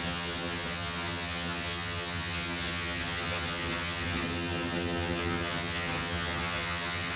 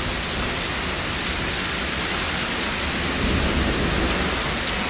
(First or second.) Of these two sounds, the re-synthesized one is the first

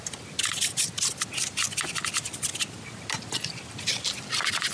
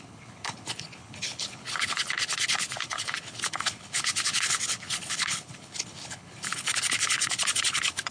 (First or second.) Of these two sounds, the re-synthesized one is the second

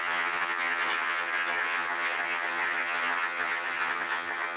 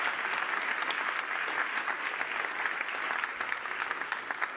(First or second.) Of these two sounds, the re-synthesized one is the first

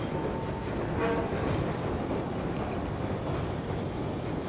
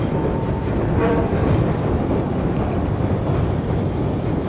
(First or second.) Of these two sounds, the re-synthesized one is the second